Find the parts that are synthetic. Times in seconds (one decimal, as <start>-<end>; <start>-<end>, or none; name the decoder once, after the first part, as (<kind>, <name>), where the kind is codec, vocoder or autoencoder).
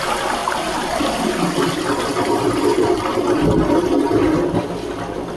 none